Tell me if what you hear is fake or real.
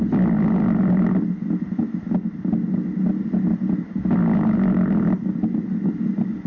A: real